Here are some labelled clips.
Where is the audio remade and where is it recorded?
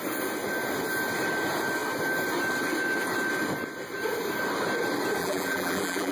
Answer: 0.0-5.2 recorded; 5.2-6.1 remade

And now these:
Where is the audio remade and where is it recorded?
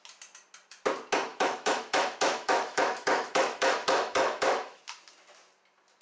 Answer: 0.0-1.3 recorded; 1.3-4.8 remade; 4.8-6.0 recorded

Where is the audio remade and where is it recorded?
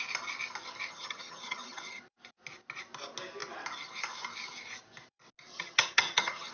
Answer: 0.0-0.9 recorded; 0.9-2.0 remade; 2.0-5.5 recorded; 5.5-6.5 remade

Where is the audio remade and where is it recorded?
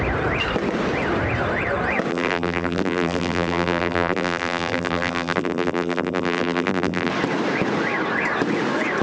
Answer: 0.0-2.1 recorded; 2.1-7.1 remade; 7.1-9.0 recorded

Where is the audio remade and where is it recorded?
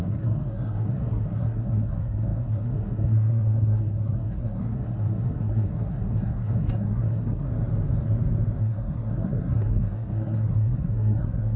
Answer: 0.0-7.5 remade; 7.5-8.6 recorded; 8.6-11.6 remade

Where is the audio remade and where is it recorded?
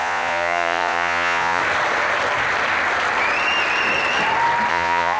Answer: 0.0-1.6 remade; 1.6-4.7 recorded; 4.7-5.2 remade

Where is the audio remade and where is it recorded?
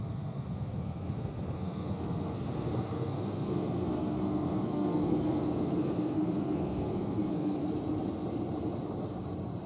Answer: 0.0-7.6 remade; 7.6-9.7 recorded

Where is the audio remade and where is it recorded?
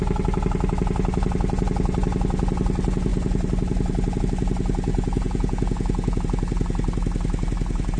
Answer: 0.0-4.9 recorded; 4.9-6.2 remade; 6.2-8.0 recorded